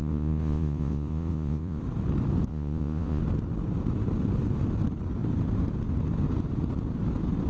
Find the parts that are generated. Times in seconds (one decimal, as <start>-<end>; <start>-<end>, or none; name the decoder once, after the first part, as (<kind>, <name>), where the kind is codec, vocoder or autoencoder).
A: 0.0-1.8 (vocoder, Vocos); 2.5-3.2